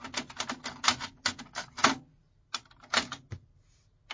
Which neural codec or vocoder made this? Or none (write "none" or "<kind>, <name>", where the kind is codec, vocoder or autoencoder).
none